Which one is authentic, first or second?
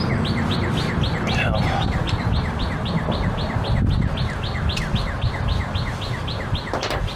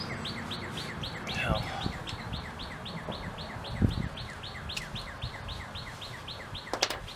second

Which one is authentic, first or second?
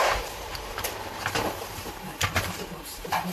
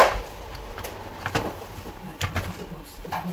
second